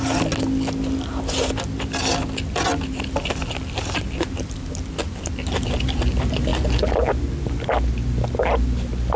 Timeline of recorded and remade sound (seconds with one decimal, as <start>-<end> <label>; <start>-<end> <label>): 0.0-5.1 recorded; 5.1-6.0 remade; 6.0-9.2 recorded